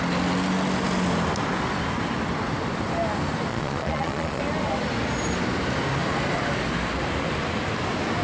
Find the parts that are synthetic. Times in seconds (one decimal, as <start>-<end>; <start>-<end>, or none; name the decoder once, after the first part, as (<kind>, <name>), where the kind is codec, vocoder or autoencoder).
3.5-4.4 (vocoder, Vocos)